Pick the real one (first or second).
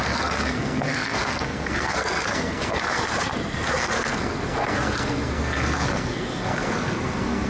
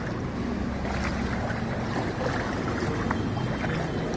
second